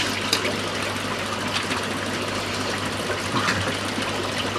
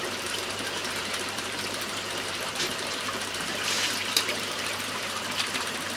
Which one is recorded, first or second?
first